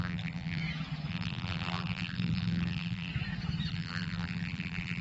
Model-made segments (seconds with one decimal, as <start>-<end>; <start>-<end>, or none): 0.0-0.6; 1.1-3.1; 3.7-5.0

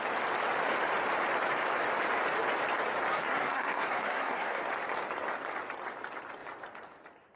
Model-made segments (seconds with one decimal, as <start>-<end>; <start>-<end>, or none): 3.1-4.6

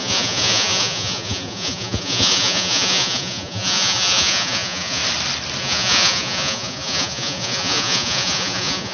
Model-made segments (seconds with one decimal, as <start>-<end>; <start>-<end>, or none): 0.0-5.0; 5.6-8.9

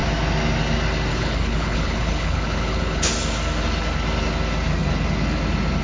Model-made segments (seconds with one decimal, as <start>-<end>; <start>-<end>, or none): 1.1-3.1